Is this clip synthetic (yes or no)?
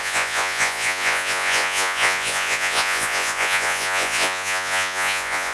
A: yes